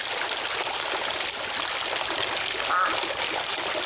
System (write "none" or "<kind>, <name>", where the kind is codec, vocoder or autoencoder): none